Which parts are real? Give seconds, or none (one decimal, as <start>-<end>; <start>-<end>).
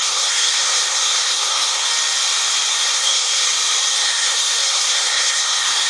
1.9-2.7; 3.4-4.0